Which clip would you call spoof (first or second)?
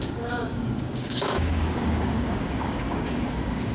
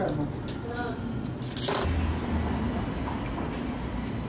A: first